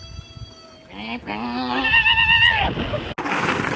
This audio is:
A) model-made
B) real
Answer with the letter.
B